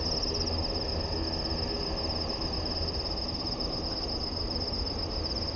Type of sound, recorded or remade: recorded